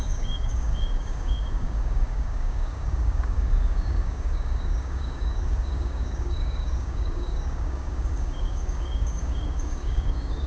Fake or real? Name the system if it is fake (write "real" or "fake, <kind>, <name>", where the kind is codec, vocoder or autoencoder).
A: fake, codec, DAC